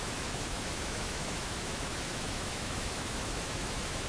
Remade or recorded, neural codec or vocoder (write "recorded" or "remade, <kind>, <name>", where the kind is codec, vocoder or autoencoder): remade, autoencoder, DAC-VAE